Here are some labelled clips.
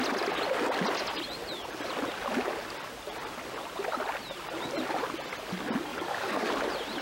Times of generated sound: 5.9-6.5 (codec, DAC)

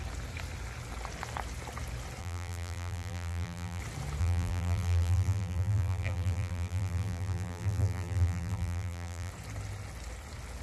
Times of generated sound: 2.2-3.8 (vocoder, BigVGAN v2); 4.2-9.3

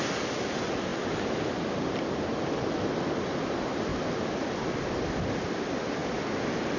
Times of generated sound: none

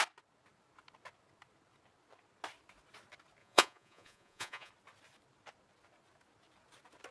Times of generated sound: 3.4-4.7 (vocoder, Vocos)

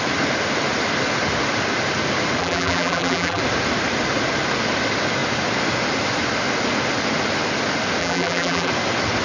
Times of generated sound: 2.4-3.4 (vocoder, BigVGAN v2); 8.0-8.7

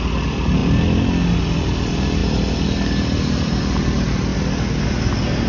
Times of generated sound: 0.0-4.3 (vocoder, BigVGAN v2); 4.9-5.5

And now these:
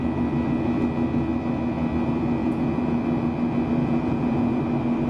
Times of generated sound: 2.4-3.0 (vocoder, Vocos); 3.8-4.6